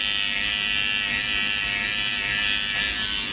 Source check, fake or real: real